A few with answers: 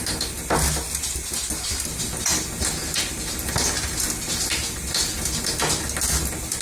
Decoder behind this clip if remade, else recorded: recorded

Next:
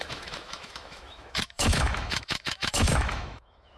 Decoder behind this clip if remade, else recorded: remade, autoencoder, DAC-VAE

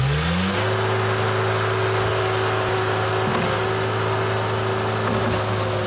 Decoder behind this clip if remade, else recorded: recorded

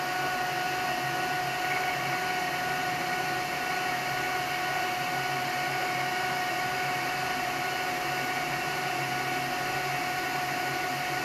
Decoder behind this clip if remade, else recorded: recorded